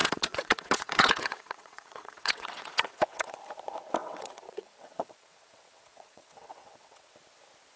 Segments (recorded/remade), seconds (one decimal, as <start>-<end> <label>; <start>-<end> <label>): 0.0-3.4 remade; 3.4-4.0 recorded; 4.0-7.1 remade; 7.1-7.8 recorded